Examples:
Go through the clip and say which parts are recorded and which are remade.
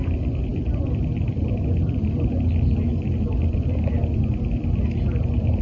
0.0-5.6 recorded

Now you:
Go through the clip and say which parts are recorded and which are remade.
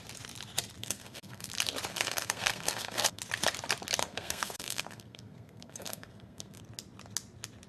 0.0-0.8 recorded; 0.8-1.5 remade; 1.5-1.9 recorded; 1.9-3.2 remade; 3.2-4.0 recorded; 4.0-6.6 remade; 6.6-7.7 recorded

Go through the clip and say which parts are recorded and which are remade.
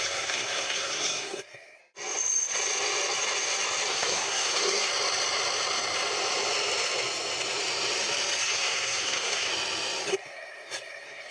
0.0-1.8 remade; 1.8-3.9 recorded; 3.9-4.9 remade; 4.9-8.4 recorded; 8.4-9.5 remade; 9.5-10.1 recorded; 10.1-11.3 remade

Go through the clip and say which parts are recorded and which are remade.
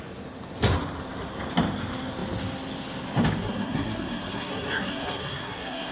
0.0-3.4 recorded; 3.4-5.9 remade